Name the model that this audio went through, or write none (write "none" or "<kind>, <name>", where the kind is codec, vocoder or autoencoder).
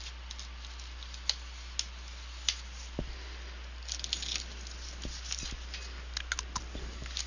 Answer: none